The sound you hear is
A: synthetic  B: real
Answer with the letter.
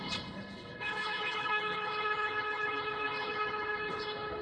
A